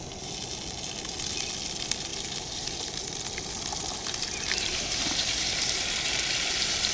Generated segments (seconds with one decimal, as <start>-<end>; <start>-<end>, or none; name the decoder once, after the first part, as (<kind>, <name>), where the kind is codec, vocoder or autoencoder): 2.1-3.0 (vocoder, BigVGAN v2); 3.7-6.9